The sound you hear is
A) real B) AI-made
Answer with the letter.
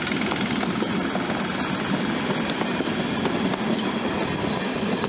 A